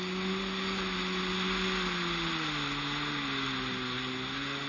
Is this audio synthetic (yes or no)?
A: no